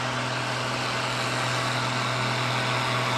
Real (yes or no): yes